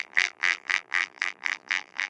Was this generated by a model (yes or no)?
yes